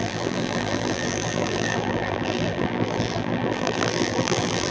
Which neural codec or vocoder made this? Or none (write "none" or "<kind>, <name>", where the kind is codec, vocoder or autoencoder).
vocoder, BigVGAN v2